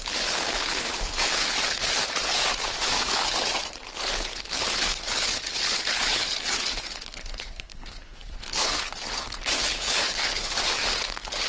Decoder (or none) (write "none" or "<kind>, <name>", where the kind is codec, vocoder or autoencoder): codec, HILCodec